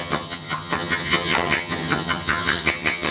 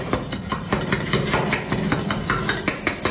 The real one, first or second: second